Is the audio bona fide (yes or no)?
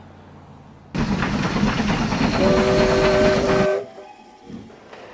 yes